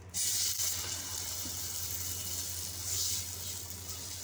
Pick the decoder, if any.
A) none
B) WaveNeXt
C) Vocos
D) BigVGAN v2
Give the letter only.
A